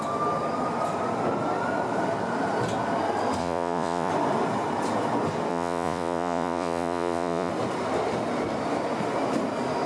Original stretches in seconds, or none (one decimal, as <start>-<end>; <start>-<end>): 0.0-3.4; 4.1-5.5; 7.5-9.9